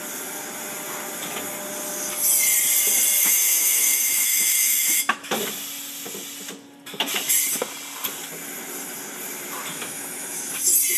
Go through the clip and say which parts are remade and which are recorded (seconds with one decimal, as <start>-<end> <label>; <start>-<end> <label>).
0.0-3.2 recorded; 3.2-5.3 remade; 5.3-9.7 recorded; 9.7-10.5 remade; 10.5-11.0 recorded